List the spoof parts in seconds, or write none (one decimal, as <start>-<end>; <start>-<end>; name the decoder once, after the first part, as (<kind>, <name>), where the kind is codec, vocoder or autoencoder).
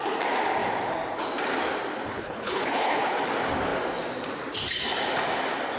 2.1-3.2 (codec, HILCodec)